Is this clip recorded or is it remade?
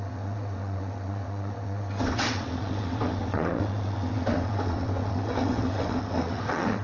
remade